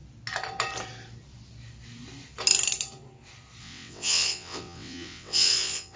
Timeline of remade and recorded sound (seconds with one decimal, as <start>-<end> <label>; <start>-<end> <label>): 0.0-3.6 recorded; 3.6-6.0 remade